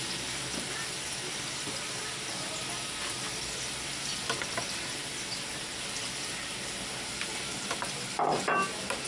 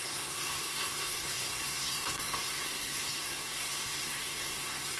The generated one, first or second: second